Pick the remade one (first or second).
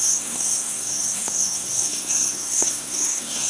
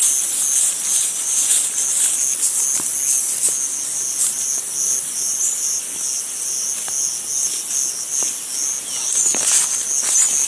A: first